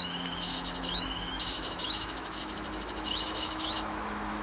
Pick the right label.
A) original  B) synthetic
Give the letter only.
B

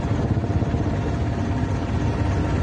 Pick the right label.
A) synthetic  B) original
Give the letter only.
B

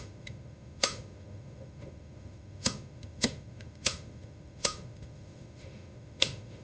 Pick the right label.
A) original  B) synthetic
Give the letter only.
B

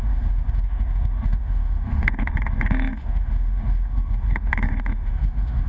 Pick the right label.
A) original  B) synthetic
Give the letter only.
B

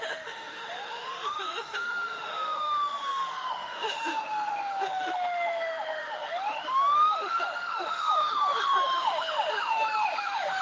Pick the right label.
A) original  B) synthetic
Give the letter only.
B